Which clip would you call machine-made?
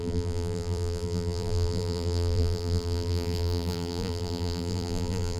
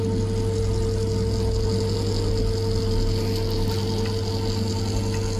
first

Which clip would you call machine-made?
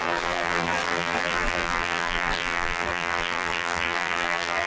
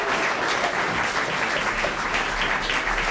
first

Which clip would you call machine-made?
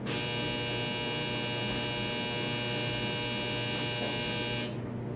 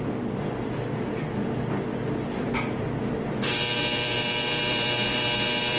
second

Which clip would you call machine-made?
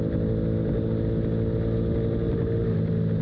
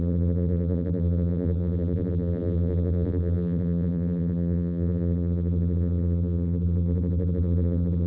second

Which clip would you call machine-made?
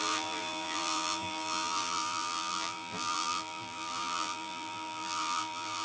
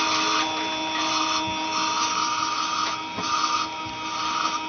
first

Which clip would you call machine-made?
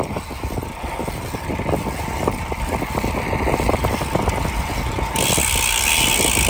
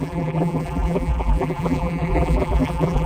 second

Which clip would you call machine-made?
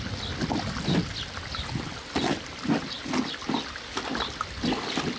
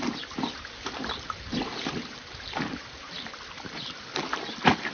second